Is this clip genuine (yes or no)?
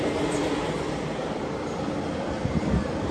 no